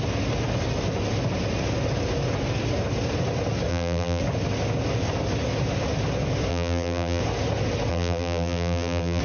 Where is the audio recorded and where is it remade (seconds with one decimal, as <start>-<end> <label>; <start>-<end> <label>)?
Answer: 0.0-3.7 recorded; 3.7-4.2 remade; 4.2-6.5 recorded; 6.5-7.2 remade; 7.2-7.9 recorded; 7.9-9.2 remade